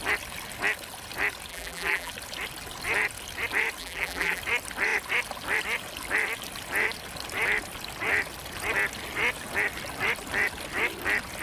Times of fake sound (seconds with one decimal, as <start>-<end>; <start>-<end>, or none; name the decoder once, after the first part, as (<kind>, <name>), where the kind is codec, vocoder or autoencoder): 1.5-2.1 (vocoder, BigVGAN v2); 3.8-4.4